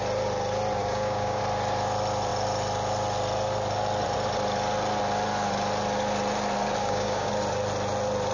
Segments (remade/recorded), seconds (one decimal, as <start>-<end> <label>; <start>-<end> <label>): 0.0-0.8 recorded; 0.8-1.4 remade; 1.4-6.8 recorded; 6.8-7.3 remade; 7.3-8.3 recorded